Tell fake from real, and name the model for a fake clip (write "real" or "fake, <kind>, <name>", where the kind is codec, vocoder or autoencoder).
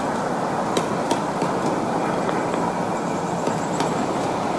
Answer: real